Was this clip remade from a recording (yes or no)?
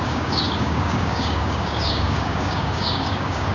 yes